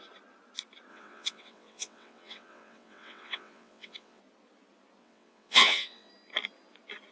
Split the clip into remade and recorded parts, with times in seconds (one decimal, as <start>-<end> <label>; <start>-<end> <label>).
0.0-0.9 recorded; 0.9-4.2 remade; 4.2-5.0 recorded; 5.0-6.1 remade; 6.1-7.1 recorded

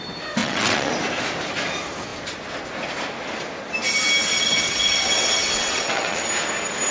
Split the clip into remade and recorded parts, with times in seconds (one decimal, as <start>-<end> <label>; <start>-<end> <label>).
0.0-0.4 recorded; 0.4-0.9 remade; 0.9-4.2 recorded; 4.2-6.3 remade; 6.3-6.9 recorded

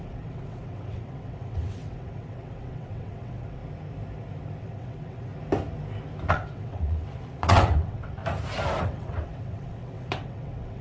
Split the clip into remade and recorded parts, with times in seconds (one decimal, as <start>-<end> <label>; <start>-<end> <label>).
0.0-3.6 remade; 3.6-4.6 recorded; 4.6-5.3 remade; 5.3-6.3 recorded; 6.3-8.2 remade; 8.2-8.8 recorded; 8.8-10.8 remade

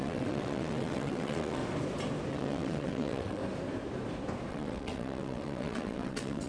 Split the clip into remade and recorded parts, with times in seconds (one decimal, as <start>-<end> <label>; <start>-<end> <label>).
0.0-1.6 remade; 1.6-2.3 recorded; 2.3-3.4 remade; 3.4-4.5 recorded; 4.5-6.5 remade

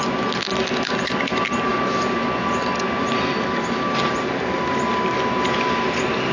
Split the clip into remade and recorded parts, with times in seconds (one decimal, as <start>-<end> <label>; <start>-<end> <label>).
0.0-6.3 recorded